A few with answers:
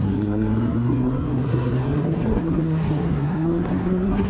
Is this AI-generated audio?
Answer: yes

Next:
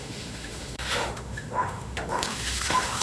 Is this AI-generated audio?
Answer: yes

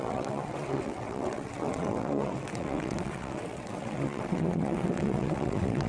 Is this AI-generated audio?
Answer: yes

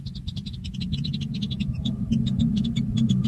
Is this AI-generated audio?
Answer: no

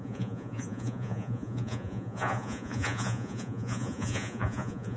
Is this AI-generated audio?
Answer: yes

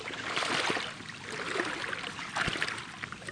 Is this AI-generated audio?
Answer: no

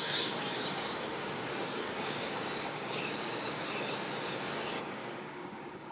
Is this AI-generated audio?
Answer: yes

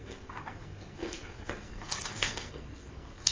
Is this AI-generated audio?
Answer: yes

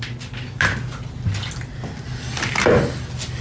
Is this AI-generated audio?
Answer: no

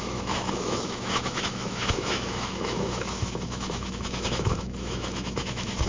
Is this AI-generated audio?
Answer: yes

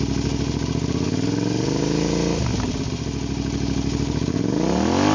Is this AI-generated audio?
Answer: no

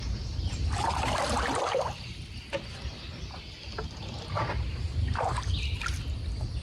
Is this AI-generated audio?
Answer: no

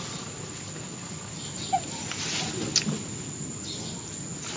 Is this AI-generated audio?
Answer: no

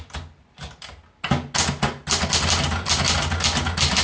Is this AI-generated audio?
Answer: no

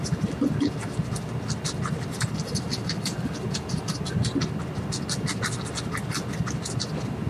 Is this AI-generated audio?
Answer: no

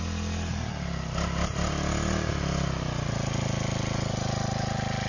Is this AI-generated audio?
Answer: no